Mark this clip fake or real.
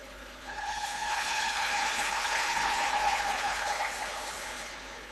fake